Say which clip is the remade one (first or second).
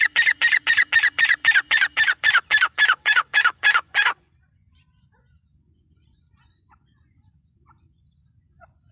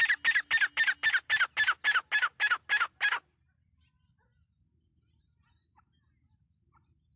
first